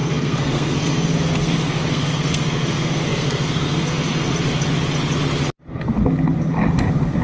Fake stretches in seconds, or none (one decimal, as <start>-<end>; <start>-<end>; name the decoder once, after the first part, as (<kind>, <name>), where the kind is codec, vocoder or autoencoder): 0.0-4.3 (codec, SNAC)